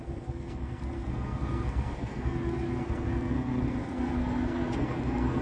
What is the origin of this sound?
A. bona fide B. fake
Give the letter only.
B